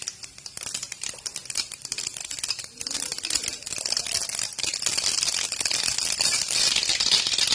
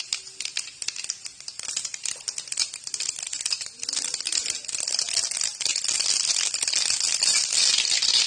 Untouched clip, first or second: second